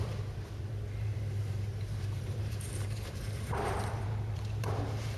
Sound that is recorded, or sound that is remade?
remade